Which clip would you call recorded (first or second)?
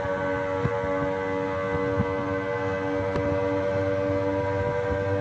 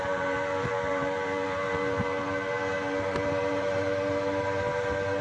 first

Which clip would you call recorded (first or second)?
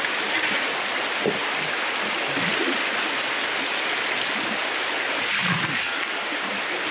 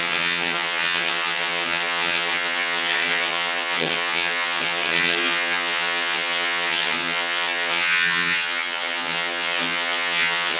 first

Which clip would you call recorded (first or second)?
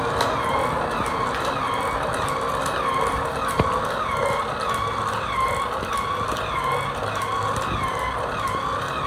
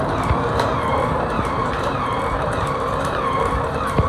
first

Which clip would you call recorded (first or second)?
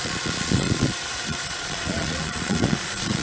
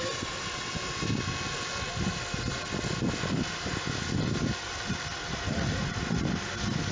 second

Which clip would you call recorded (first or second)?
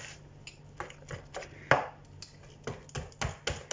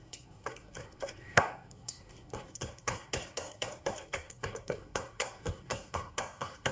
first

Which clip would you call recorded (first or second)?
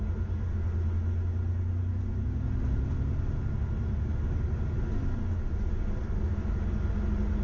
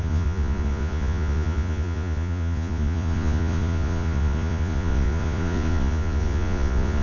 first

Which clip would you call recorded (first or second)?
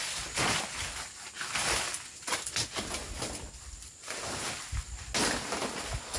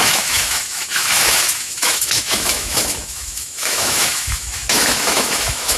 first